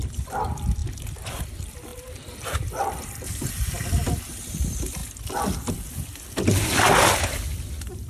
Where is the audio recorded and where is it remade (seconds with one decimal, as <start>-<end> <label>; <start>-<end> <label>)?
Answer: 0.0-8.1 recorded